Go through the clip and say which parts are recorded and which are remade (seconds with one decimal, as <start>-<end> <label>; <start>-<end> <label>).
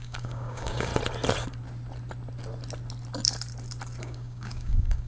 0.0-0.9 remade; 0.9-4.0 recorded; 4.0-5.1 remade